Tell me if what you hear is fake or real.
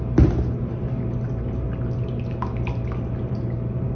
real